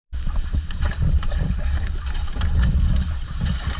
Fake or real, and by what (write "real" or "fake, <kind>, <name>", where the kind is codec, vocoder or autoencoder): fake, vocoder, BigVGAN v2